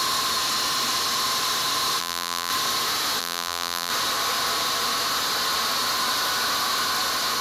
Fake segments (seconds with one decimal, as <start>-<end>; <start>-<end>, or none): 2.0-2.5; 3.2-3.9